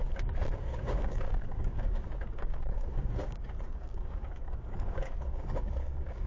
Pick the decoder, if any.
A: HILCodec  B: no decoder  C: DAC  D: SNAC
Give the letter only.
C